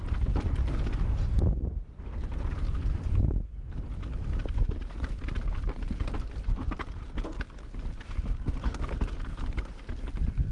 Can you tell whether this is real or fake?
real